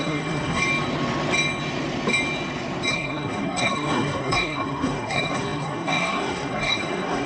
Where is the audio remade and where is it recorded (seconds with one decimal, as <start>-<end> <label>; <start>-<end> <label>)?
0.0-0.6 remade; 0.6-2.9 recorded; 2.9-7.3 remade